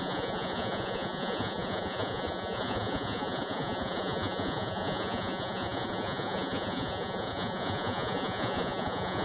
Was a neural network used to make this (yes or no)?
yes